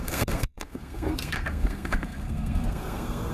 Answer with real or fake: fake